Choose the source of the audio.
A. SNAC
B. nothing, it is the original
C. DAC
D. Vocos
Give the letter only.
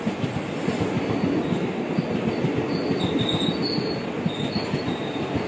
B